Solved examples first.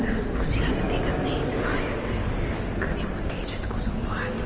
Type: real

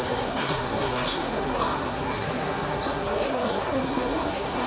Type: fake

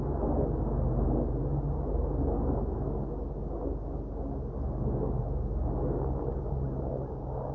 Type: real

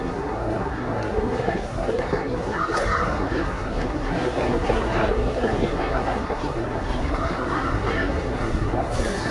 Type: fake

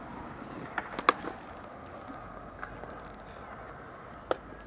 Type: real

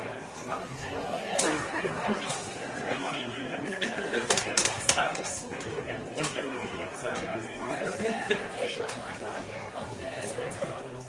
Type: fake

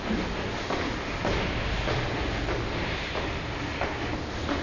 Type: real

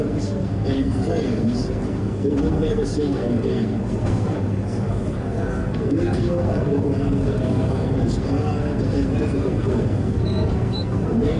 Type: fake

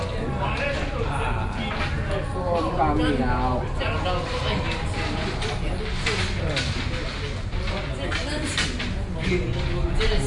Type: real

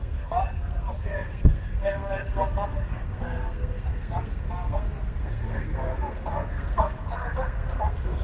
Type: fake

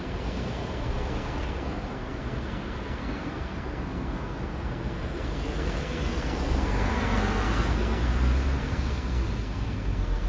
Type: fake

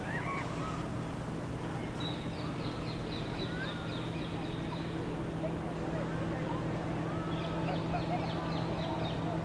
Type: real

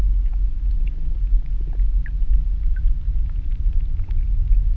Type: real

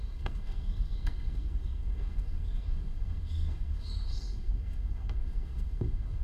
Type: fake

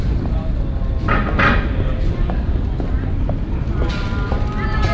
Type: real